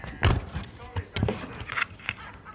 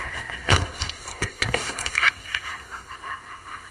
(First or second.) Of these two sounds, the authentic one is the first